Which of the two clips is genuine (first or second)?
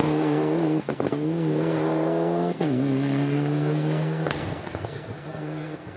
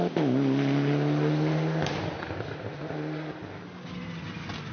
second